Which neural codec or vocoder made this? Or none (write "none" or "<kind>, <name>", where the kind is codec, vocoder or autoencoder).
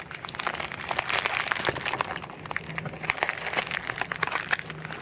none